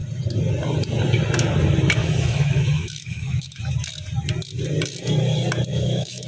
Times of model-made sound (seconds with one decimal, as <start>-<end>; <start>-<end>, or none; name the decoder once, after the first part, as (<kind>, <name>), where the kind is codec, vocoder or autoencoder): 2.0-3.6 (autoencoder, DAC-VAE); 5.7-6.3